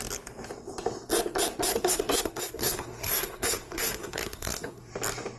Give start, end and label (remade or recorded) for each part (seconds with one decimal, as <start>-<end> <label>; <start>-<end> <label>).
0.0-1.7 recorded; 1.7-4.9 remade; 4.9-5.4 recorded